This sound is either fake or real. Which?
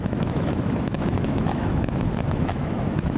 fake